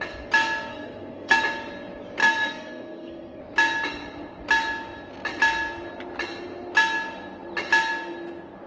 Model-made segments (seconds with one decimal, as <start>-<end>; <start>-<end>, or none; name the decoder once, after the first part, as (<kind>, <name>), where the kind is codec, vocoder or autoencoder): 0.7-1.4 (codec, SNAC); 2.2-3.4